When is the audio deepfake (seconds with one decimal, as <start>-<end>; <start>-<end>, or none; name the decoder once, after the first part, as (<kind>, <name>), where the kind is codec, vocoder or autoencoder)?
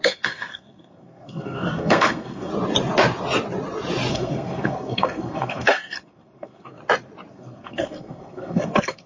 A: 0.0-2.5 (codec, SNAC); 4.1-6.8; 7.3-9.1